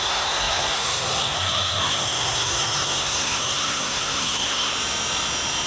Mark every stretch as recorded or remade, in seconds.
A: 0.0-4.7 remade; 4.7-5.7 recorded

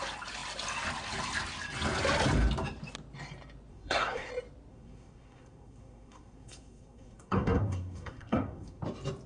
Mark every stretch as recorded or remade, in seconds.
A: 0.0-3.7 recorded; 3.7-4.3 remade; 4.3-4.7 recorded; 4.7-8.8 remade; 8.8-9.3 recorded

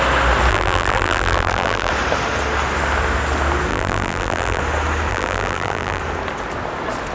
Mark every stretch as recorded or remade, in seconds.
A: 0.0-0.5 recorded; 0.5-1.9 remade; 1.9-3.7 recorded; 3.7-4.6 remade; 4.6-5.1 recorded; 5.1-6.0 remade; 6.0-7.1 recorded

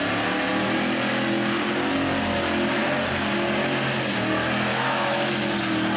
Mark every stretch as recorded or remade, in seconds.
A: 0.0-4.7 recorded; 4.7-5.3 remade; 5.3-6.0 recorded

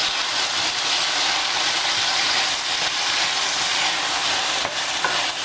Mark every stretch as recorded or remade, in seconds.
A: 0.0-5.4 recorded

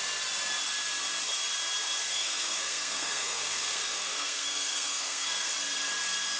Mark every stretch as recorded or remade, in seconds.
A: 0.0-2.1 recorded; 2.1-5.5 remade; 5.5-6.4 recorded

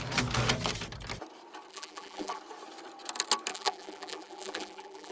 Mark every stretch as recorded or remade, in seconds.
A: 0.0-1.7 recorded; 1.7-2.4 remade; 2.4-3.5 recorded; 3.5-5.1 remade

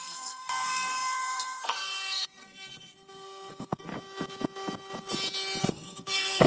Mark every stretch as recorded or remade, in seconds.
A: 0.0-3.9 remade; 3.9-5.6 recorded; 5.6-6.5 remade